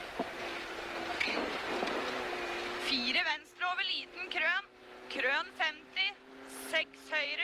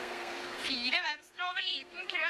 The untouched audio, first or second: first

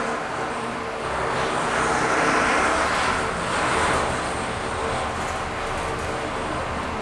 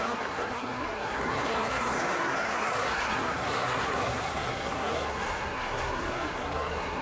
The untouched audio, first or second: first